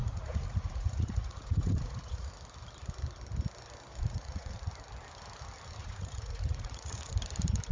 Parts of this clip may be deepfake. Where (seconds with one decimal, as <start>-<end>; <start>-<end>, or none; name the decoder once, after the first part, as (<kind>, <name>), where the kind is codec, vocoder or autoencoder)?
0.0-2.3 (vocoder, Vocos); 3.9-4.5; 5.8-7.1